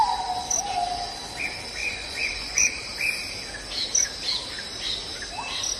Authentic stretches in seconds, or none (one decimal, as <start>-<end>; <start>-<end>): 0.0-1.8; 2.8-5.8

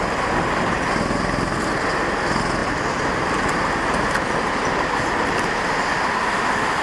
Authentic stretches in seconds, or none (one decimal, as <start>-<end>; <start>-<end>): 0.0-6.8

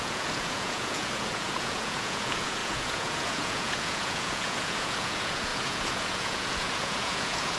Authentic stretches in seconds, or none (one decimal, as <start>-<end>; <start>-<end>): none

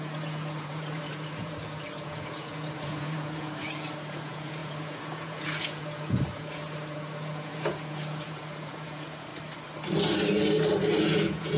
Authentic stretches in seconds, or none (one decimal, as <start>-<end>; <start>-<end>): 9.3-11.0

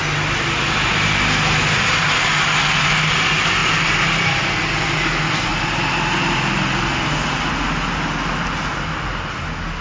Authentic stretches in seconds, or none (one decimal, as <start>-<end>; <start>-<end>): 0.0-9.8

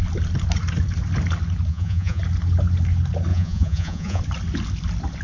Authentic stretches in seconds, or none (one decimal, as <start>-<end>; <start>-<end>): 0.0-1.7; 2.2-3.3; 4.2-5.2